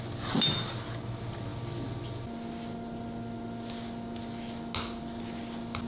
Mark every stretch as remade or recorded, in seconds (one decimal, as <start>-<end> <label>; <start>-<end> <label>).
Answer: 0.0-5.9 recorded